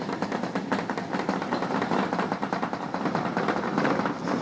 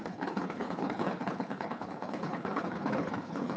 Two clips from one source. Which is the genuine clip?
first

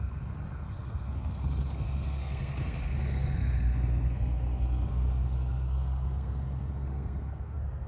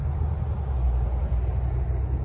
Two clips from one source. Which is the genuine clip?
second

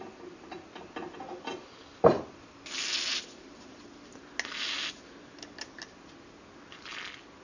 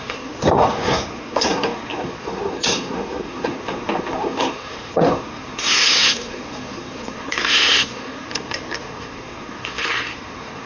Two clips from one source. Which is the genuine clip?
first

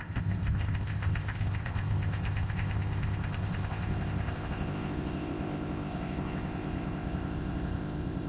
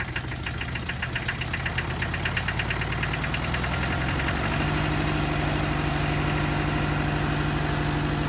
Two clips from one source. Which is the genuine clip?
second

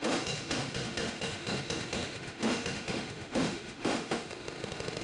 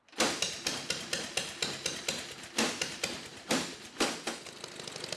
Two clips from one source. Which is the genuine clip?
second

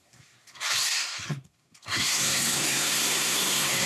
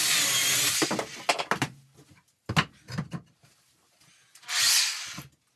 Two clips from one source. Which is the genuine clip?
second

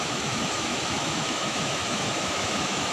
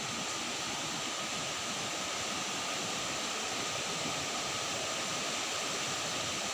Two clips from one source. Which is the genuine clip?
second